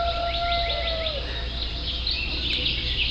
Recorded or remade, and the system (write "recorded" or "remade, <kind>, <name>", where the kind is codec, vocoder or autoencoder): recorded